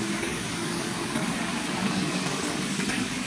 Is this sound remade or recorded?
remade